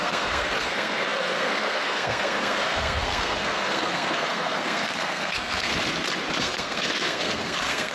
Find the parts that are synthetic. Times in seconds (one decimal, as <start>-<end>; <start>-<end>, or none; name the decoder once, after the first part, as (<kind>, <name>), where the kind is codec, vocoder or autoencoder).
0.0-5.7 (codec, SNAC); 6.4-7.9